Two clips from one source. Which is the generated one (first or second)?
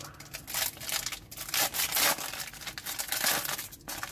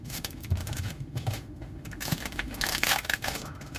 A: second